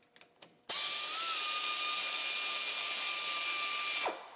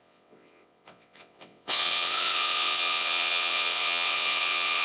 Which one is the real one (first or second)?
first